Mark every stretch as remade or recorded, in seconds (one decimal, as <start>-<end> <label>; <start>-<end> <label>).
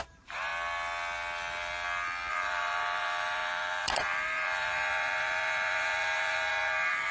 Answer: 0.0-0.5 remade; 0.5-2.3 recorded; 2.3-7.1 remade